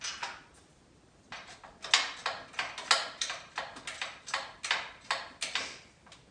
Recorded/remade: recorded